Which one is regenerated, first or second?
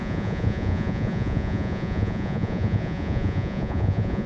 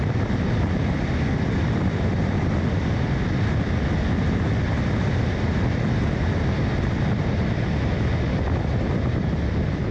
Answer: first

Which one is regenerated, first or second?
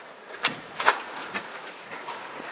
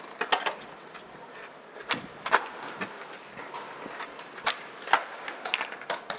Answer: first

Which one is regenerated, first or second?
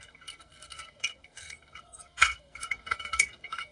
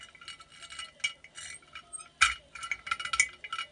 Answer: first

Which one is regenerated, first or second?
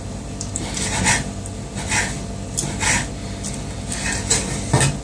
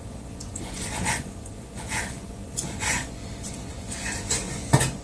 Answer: second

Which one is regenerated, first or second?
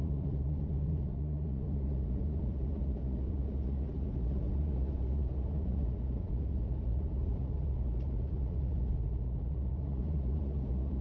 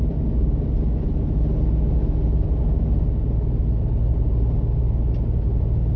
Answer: first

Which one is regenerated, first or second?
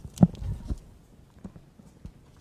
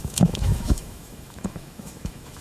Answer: second